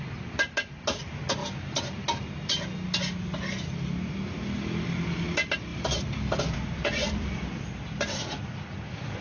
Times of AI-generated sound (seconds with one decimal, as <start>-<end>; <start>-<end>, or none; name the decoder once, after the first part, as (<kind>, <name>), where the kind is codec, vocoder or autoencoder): 5.7-8.5 (vocoder, BigVGAN v2)